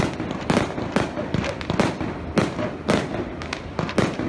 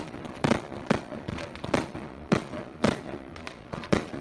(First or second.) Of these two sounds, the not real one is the second